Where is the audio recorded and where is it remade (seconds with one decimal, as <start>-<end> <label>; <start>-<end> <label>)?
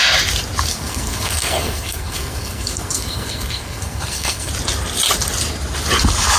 0.0-0.7 recorded; 0.7-4.5 remade; 4.5-6.4 recorded